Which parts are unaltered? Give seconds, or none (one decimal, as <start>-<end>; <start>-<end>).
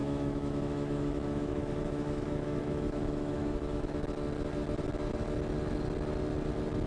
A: 4.1-6.9